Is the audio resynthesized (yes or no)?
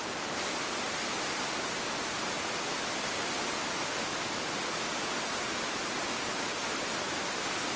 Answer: no